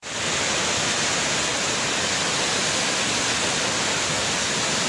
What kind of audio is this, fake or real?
real